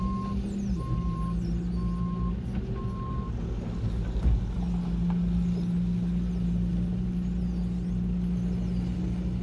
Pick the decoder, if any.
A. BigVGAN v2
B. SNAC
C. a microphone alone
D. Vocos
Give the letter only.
C